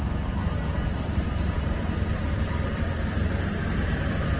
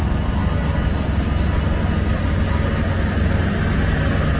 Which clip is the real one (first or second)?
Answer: second